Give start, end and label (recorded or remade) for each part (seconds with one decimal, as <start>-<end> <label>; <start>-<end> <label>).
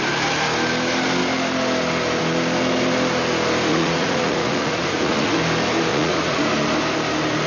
0.0-3.7 recorded; 3.7-5.4 remade; 5.4-5.9 recorded; 5.9-6.4 remade; 6.4-7.5 recorded